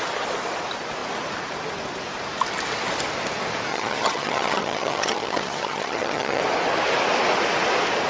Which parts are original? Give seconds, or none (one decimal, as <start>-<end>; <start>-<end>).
0.0-3.7; 6.4-8.1